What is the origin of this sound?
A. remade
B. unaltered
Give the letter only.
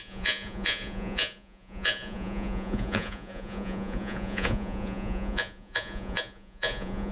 A